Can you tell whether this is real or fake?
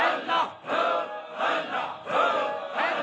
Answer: real